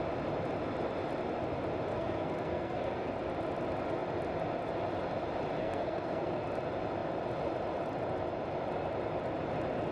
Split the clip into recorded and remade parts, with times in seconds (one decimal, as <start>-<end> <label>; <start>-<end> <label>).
0.0-1.9 recorded; 1.9-3.1 remade; 3.1-5.6 recorded; 5.6-6.4 remade; 6.4-9.9 recorded

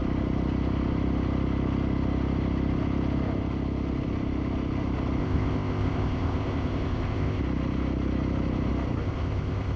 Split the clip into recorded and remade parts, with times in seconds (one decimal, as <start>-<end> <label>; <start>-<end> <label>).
0.0-5.2 recorded; 5.2-7.4 remade; 7.4-9.0 recorded; 9.0-9.8 remade

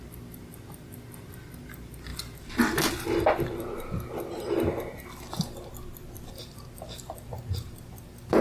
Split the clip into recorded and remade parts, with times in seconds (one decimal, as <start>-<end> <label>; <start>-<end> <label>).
0.0-8.4 recorded

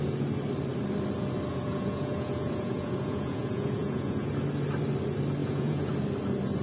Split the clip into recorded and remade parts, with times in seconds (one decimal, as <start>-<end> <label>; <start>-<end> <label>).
0.0-1.5 recorded; 1.5-4.3 remade; 4.3-5.4 recorded; 5.4-5.9 remade; 5.9-6.6 recorded

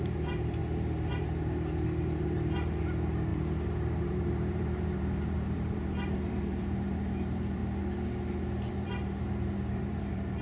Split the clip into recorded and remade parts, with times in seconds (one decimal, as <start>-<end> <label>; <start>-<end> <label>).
0.0-0.6 remade; 0.6-1.1 recorded; 1.1-7.6 remade; 7.6-8.7 recorded; 8.7-10.4 remade